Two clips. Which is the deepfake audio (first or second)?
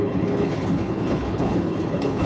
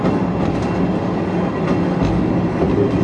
first